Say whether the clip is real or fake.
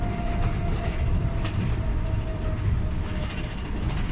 real